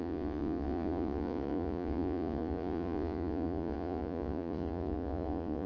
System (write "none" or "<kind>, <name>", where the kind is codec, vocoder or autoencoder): vocoder, Vocos